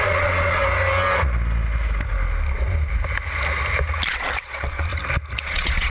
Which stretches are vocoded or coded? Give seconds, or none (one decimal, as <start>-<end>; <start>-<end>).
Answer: 0.0-0.6; 4.1-4.9; 5.4-5.9